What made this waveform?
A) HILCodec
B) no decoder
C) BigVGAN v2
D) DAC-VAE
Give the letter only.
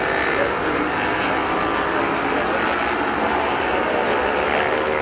B